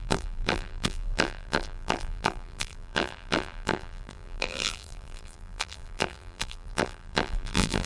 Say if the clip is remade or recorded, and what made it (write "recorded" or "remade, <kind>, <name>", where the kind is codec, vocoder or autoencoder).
remade, vocoder, BigVGAN v2